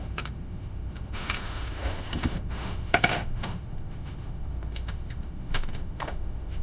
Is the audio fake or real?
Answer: fake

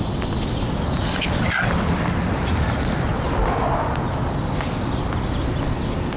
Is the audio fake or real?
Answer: real